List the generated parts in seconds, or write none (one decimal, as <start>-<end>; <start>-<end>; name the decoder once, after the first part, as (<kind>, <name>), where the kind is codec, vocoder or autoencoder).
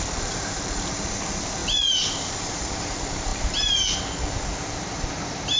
0.0-1.6 (vocoder, BigVGAN v2); 2.3-5.6